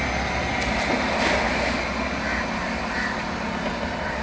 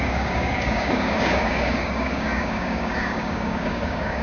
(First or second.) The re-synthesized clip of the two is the second